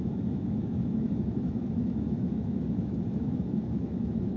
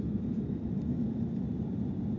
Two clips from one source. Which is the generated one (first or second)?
first